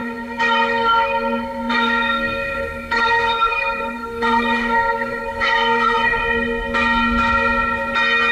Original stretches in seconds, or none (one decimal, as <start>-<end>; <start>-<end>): 6.2-8.3